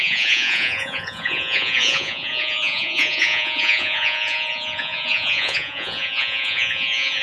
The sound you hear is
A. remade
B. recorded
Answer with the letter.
A